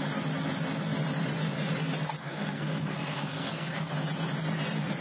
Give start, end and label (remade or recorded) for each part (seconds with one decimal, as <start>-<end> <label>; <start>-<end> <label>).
0.0-2.2 recorded; 2.2-3.9 remade; 3.9-5.0 recorded